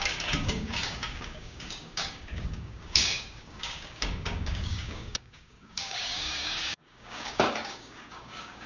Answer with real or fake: fake